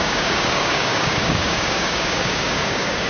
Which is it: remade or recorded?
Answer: remade